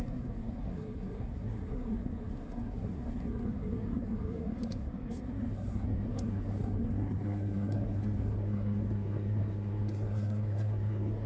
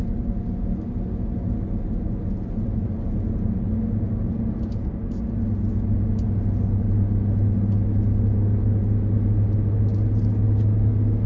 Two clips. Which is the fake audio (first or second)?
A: first